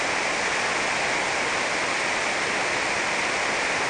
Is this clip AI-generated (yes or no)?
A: no